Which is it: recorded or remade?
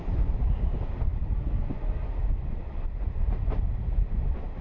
recorded